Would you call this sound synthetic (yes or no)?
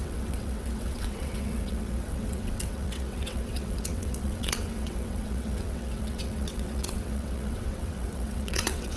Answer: yes